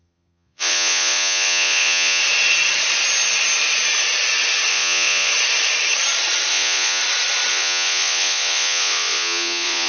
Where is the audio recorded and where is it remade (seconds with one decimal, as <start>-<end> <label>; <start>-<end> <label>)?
0.0-2.2 remade; 2.2-4.7 recorded; 4.7-5.3 remade; 5.3-6.5 recorded; 6.5-7.0 remade; 7.0-7.5 recorded; 7.5-9.9 remade